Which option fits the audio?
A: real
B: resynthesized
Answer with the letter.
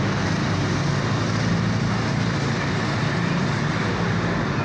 A